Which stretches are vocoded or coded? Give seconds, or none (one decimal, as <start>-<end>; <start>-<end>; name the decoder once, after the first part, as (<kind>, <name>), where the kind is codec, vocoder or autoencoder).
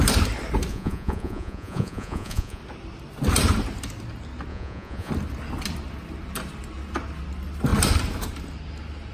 0.7-2.6 (vocoder, Vocos); 4.5-5.1